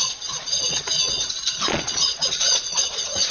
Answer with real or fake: fake